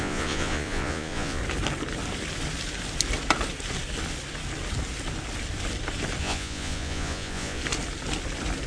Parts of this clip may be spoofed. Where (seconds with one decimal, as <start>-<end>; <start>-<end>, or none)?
0.0-1.4; 6.2-7.6